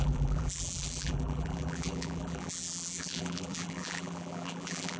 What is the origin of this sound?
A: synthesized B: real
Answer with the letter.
A